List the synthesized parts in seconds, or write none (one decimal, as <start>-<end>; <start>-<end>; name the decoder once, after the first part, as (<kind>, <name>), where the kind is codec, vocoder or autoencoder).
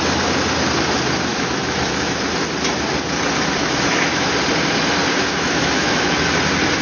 1.3-2.2 (autoencoder, DAC-VAE); 3.6-4.3; 5.0-6.3